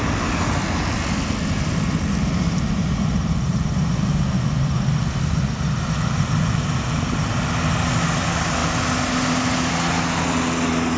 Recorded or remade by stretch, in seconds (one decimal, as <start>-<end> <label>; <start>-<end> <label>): 0.0-11.0 recorded